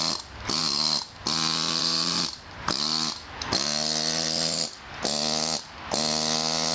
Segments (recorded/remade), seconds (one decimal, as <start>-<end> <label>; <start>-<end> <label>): 0.0-1.8 recorded; 1.8-2.5 remade; 2.5-6.7 recorded